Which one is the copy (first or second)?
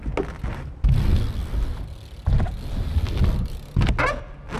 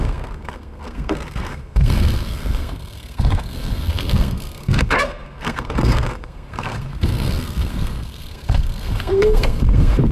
second